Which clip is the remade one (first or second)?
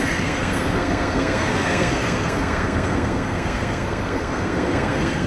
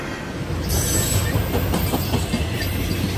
first